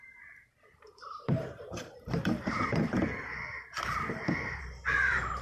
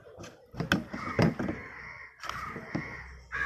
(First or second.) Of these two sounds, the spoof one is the first